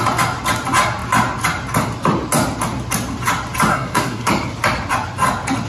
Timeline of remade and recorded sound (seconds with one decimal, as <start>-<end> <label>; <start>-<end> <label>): 0.0-3.7 recorded; 3.7-4.3 remade; 4.3-5.7 recorded